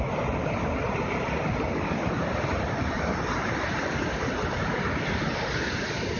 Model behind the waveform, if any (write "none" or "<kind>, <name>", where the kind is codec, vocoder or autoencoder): none